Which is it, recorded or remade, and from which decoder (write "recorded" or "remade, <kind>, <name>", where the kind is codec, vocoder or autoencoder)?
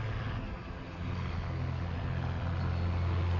recorded